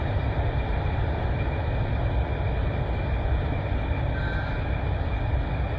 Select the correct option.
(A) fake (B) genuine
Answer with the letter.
B